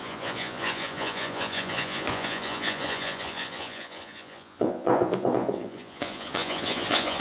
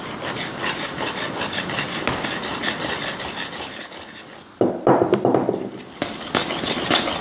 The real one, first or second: second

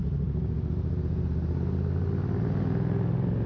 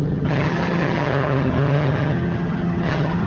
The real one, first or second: first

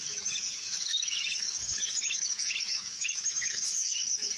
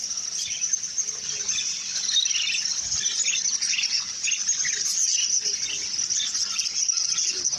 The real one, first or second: second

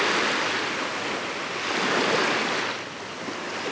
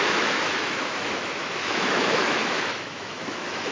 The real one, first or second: first